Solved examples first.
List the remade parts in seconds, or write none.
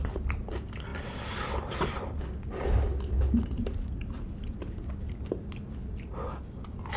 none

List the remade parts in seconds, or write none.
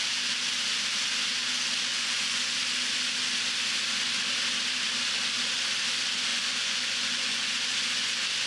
1.9-2.4 (vocoder, Vocos); 6.3-7.6